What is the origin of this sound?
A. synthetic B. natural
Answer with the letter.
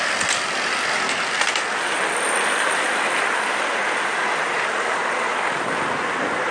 B